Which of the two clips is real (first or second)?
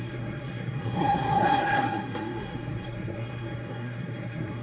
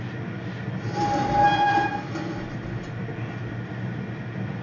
second